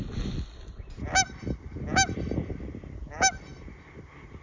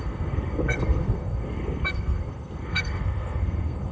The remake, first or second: second